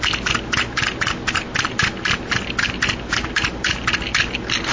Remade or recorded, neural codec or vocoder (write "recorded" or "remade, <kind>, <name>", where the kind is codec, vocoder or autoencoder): recorded